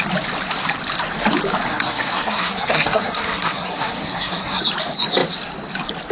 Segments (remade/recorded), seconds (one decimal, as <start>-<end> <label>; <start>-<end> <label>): 0.0-1.7 recorded; 1.7-4.6 remade; 4.6-6.1 recorded

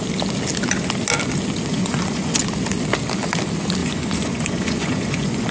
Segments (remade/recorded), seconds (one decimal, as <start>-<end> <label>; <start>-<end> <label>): 0.0-1.7 recorded; 1.7-2.4 remade; 2.4-3.8 recorded; 3.8-5.5 remade

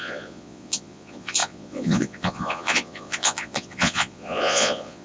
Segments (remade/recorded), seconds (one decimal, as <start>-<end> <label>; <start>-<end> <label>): 0.0-5.0 remade

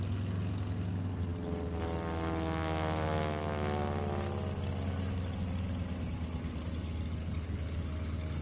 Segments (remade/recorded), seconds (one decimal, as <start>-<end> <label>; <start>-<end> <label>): 0.0-7.2 recorded; 7.2-7.8 remade; 7.8-8.4 recorded

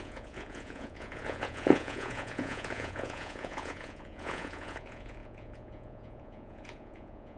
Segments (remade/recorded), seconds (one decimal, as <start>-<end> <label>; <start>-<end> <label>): 0.0-7.4 remade

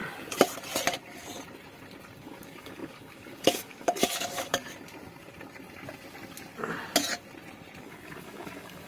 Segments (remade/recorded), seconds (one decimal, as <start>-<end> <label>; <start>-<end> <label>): 0.0-2.2 recorded; 2.2-4.6 remade; 4.6-7.8 recorded; 7.8-8.9 remade

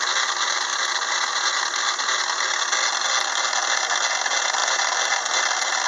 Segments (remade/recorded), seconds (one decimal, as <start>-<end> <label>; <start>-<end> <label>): 0.0-5.9 recorded

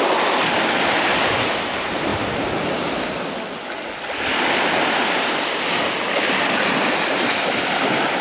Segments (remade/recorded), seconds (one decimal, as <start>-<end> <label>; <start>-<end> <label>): 0.0-8.2 recorded